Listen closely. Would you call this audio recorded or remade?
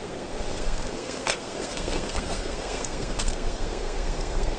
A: remade